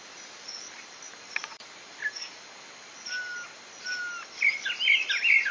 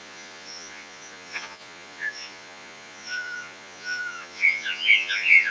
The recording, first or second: first